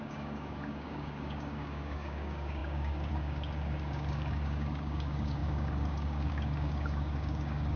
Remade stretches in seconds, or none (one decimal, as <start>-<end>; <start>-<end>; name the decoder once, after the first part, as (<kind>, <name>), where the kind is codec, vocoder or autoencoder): 0.0-7.8 (codec, DAC)